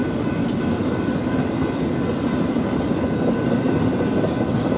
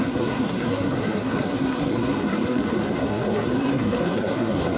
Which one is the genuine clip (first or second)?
first